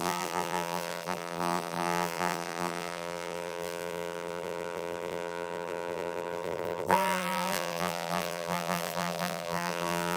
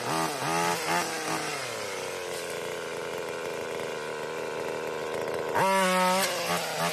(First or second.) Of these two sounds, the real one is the second